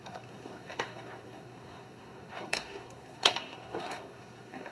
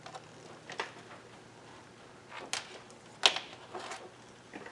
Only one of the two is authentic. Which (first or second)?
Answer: second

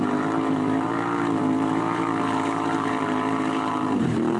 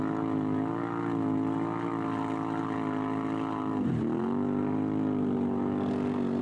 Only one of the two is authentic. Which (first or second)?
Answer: second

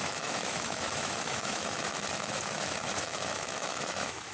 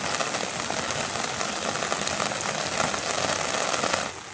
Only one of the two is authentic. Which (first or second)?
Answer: second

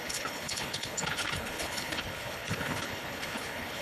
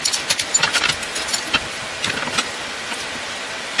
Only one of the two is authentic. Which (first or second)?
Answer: second